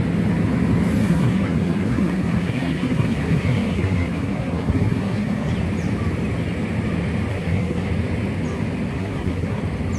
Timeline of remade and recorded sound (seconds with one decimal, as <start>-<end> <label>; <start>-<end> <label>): 0.0-1.0 recorded; 1.0-5.5 remade; 5.5-7.3 recorded; 7.3-7.9 remade; 7.9-8.9 recorded; 8.9-9.6 remade; 9.6-10.0 recorded